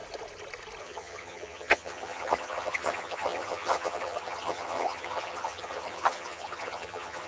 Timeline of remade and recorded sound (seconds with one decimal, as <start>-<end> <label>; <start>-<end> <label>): 0.0-0.8 recorded; 0.8-7.3 remade